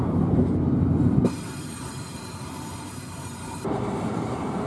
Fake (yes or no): yes